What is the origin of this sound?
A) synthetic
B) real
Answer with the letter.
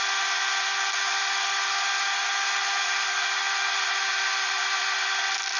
B